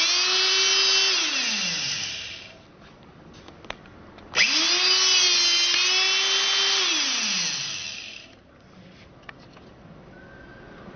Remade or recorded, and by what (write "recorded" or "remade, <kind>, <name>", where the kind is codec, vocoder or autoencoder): recorded